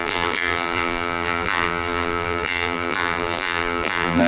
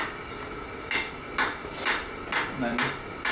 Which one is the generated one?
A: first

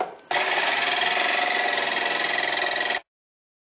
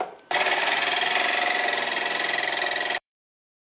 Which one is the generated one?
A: second